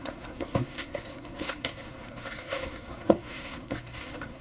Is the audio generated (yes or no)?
yes